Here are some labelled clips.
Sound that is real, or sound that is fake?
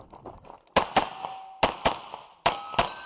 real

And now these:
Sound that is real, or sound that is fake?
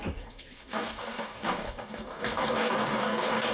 fake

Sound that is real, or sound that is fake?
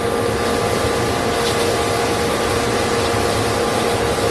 real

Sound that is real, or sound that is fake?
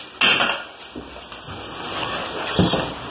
real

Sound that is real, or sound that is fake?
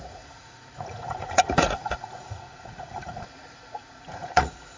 fake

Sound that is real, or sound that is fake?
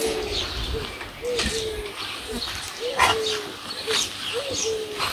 real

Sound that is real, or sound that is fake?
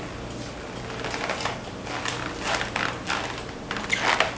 real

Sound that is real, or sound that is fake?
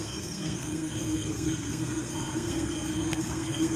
fake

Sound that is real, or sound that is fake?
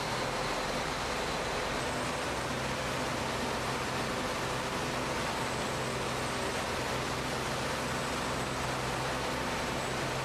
real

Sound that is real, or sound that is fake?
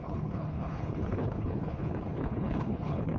fake